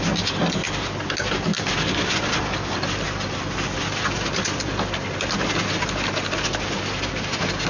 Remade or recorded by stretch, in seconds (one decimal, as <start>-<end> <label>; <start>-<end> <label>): 0.0-1.5 recorded; 1.5-5.4 remade; 5.4-7.7 recorded